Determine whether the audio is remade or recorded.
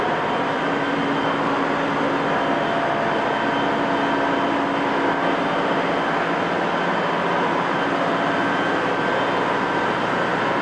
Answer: recorded